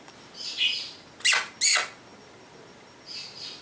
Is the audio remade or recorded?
recorded